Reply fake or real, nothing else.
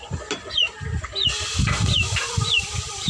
real